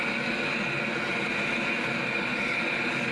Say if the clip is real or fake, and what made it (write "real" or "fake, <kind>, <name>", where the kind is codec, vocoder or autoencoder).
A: real